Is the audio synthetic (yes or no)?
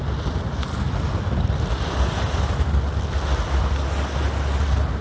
no